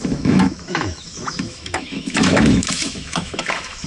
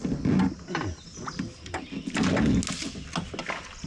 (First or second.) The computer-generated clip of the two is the first